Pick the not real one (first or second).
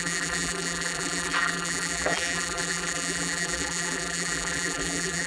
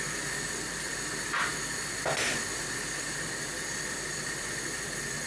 first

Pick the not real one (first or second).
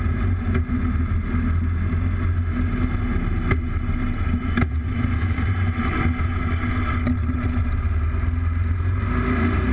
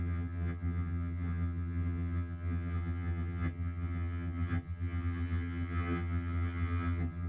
second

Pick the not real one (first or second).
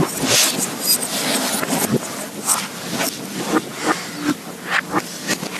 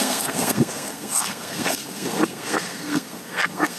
second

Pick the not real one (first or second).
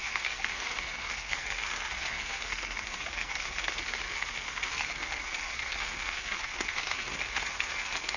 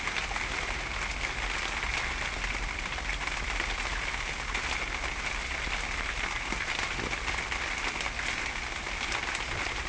first